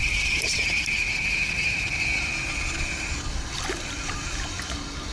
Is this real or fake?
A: real